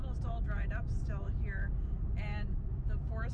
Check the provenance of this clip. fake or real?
real